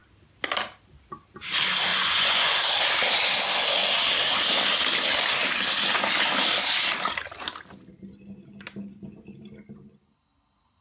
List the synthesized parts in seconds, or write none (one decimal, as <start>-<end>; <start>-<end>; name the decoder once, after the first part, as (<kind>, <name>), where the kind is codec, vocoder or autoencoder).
1.9-2.6 (vocoder, Vocos)